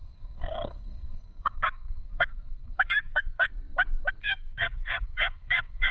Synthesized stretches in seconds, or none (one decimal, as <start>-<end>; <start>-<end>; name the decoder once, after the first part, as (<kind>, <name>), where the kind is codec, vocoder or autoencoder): 0.0-3.5 (codec, SNAC); 4.2-5.9